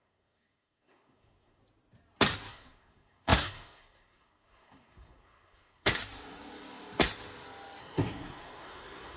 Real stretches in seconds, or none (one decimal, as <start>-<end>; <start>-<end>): 1.6-2.5; 5.9-7.8